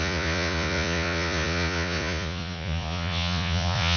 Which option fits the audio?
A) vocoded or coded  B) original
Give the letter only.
A